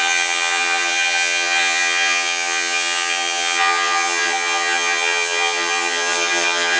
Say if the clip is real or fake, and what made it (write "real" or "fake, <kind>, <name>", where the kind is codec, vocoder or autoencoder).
fake, vocoder, HiFi-GAN